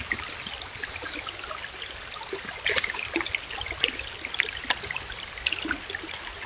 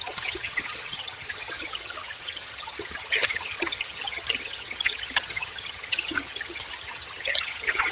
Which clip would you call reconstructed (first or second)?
second